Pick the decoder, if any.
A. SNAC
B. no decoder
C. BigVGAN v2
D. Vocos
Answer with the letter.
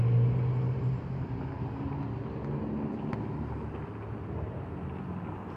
B